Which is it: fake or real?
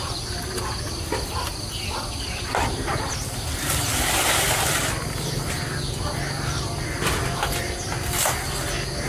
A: real